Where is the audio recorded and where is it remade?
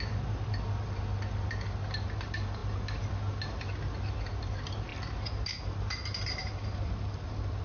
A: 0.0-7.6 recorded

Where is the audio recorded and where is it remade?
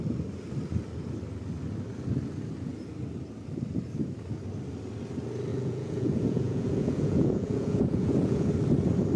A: 0.0-5.5 recorded; 5.5-8.5 remade; 8.5-9.2 recorded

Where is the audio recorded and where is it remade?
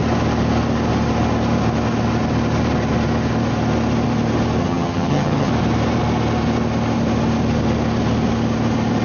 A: 0.0-4.6 recorded; 4.6-5.5 remade; 5.5-9.0 recorded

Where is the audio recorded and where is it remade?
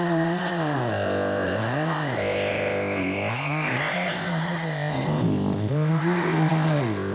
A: 0.0-7.1 remade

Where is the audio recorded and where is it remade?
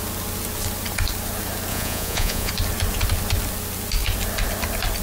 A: 0.0-1.7 recorded; 1.7-2.5 remade; 2.5-5.0 recorded